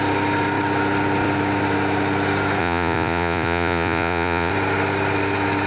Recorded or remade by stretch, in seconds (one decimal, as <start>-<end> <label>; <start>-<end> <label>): 0.0-2.6 recorded; 2.6-4.5 remade; 4.5-5.7 recorded